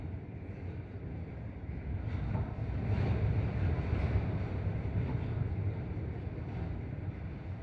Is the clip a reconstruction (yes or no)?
no